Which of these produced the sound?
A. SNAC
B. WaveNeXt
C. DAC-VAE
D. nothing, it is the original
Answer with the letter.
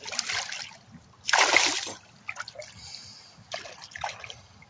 D